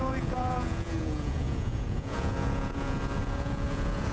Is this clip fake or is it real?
fake